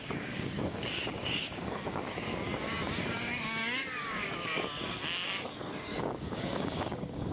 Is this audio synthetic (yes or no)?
yes